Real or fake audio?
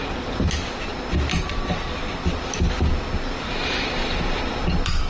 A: real